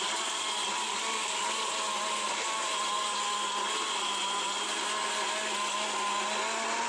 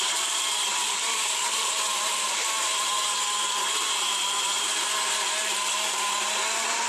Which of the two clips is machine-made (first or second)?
second